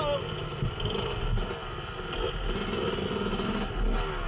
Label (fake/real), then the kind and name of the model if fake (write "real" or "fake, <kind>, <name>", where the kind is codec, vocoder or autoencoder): real